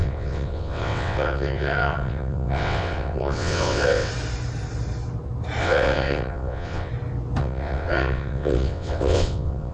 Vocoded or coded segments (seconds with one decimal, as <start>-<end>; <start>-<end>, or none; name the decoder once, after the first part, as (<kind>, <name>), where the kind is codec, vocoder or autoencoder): 0.0-4.1 (vocoder, WaveNeXt); 5.6-6.9; 7.4-9.7